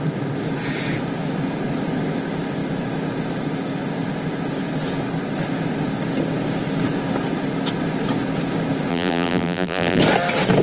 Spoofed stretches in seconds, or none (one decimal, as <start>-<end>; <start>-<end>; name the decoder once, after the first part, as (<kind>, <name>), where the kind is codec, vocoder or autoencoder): 8.9-10.0 (vocoder, BigVGAN v2)